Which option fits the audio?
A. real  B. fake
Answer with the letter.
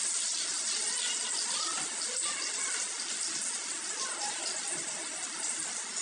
A